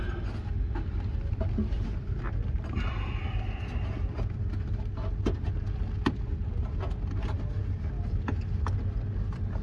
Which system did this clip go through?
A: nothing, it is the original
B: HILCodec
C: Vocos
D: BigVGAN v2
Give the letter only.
A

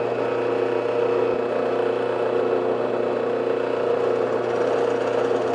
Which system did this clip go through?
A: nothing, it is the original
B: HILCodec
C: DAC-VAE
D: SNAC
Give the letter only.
A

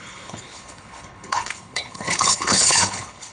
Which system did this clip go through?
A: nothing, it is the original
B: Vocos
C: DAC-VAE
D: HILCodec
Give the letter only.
D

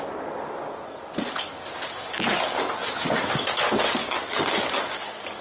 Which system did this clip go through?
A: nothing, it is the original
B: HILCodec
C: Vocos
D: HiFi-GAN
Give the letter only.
A